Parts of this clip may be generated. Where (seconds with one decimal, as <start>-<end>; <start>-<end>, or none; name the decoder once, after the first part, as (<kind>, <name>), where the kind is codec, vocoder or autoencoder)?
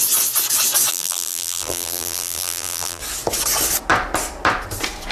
0.9-3.0 (vocoder, BigVGAN v2)